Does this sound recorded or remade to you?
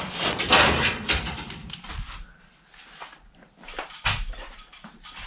remade